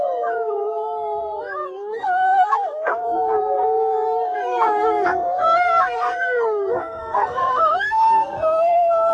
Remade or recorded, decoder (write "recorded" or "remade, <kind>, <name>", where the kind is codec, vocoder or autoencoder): remade, codec, SNAC